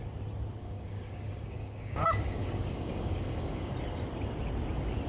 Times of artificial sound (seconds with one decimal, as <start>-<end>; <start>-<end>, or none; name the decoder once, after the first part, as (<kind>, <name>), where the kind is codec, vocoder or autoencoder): 0.6-3.7 (codec, DAC)